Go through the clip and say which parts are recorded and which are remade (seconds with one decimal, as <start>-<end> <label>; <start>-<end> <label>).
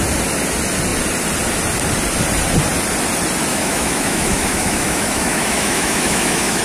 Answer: 0.0-3.5 recorded; 3.5-6.6 remade